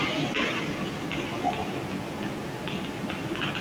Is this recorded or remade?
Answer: recorded